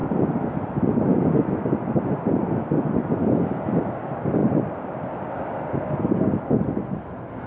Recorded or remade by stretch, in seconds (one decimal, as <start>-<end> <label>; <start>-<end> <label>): 0.0-7.5 recorded